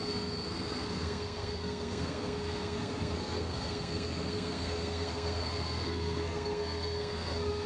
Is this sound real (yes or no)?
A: no